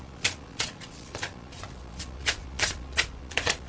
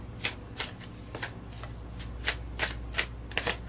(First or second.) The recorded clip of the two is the second